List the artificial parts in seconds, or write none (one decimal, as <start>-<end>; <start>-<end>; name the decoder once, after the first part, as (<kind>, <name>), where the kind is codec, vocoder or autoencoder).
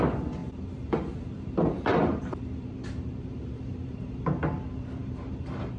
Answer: 0.4-1.1 (vocoder, BigVGAN v2); 1.9-4.2; 5.0-5.8